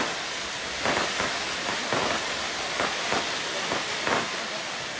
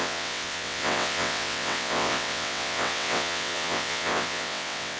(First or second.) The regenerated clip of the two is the second